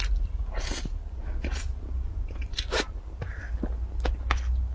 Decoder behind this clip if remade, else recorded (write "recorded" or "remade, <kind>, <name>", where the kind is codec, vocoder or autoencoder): recorded